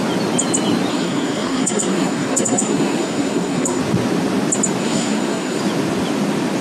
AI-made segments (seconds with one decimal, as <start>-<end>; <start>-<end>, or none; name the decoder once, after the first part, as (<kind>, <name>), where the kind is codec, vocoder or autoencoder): 0.9-3.8 (codec, SNAC); 4.8-5.6